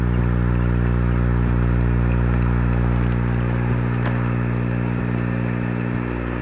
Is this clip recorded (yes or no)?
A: yes